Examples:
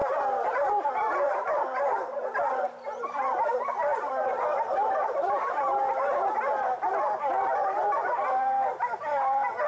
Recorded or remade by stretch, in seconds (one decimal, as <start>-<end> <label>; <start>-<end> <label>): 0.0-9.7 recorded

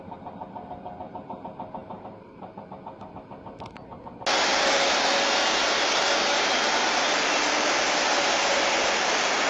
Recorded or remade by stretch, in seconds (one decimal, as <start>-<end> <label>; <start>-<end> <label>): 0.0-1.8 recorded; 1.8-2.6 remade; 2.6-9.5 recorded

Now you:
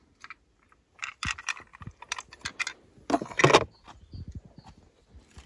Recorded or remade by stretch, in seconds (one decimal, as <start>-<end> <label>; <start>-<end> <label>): 0.0-5.5 recorded

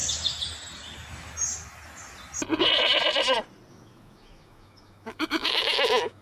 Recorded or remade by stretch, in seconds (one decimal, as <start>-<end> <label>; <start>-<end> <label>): 0.0-3.7 recorded; 3.7-6.2 remade

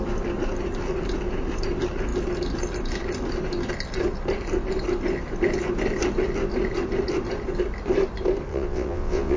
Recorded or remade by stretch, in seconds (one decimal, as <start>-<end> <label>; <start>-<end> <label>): 0.0-8.5 recorded; 8.5-9.4 remade

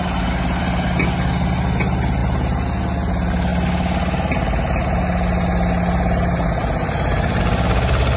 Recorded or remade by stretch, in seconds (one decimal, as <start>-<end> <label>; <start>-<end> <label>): 0.0-8.2 recorded

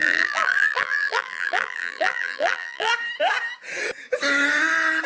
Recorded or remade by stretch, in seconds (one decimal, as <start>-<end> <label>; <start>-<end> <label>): 0.0-2.9 remade; 2.9-5.1 recorded